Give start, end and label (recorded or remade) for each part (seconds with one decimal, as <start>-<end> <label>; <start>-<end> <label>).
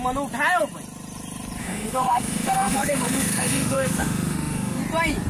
0.0-1.6 recorded; 1.6-4.8 remade; 4.8-5.3 recorded